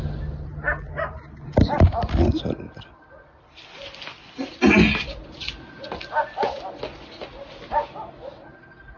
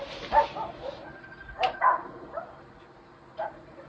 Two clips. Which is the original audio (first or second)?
first